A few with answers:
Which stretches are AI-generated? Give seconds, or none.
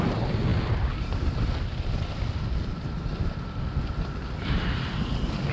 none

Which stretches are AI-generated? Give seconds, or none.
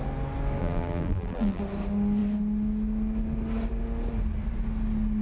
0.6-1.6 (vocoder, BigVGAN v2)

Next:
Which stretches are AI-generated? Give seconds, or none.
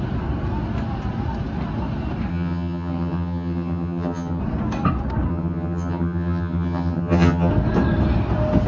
2.3-4.4 (vocoder, HiFi-GAN); 5.3-7.5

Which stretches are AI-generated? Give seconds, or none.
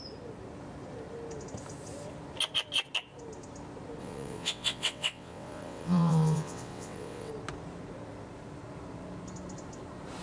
4.0-7.3 (vocoder, WaveNeXt)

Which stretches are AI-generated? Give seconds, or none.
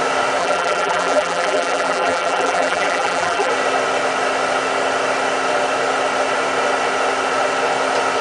0.4-3.5 (vocoder, BigVGAN v2)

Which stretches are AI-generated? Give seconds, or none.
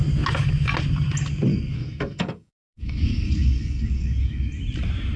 1.5-4.5 (codec, DAC)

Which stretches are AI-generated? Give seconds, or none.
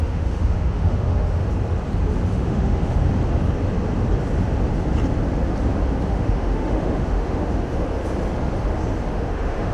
0.0-1.4 (autoencoder, DAC-VAE); 2.3-3.0; 6.1-8.0; 9.1-9.7